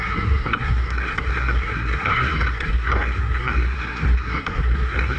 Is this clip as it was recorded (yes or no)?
no